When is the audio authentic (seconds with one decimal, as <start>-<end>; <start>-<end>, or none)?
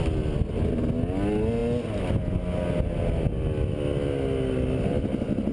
0.0-5.5